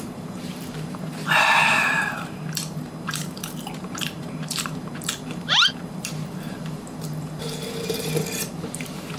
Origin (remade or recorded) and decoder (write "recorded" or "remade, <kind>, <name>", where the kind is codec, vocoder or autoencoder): remade, vocoder, BigVGAN v2